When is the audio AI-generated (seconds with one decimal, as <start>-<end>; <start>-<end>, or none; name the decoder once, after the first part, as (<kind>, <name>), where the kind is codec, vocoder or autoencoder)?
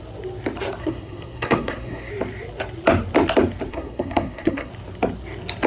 0.8-2.1 (codec, SNAC); 3.7-4.7